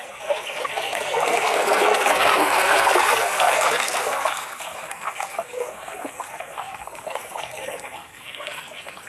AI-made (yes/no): yes